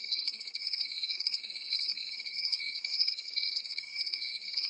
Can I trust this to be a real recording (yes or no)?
no